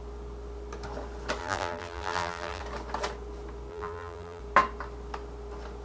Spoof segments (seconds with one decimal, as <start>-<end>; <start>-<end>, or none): 1.4-2.6; 3.7-4.4